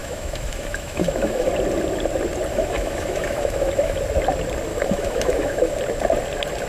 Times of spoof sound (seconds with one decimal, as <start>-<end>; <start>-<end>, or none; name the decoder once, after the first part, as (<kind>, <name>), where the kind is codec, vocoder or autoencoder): 0.0-1.5 (autoencoder, DAC-VAE); 2.5-4.0; 4.7-5.7